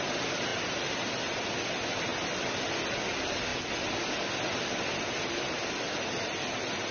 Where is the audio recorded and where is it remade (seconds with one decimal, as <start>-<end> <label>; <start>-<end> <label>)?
0.0-6.9 recorded